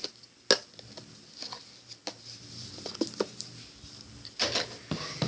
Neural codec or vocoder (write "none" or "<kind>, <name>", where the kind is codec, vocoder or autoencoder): none